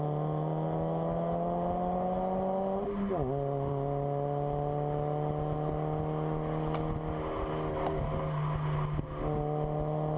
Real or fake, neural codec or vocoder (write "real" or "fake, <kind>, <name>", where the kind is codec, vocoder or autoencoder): real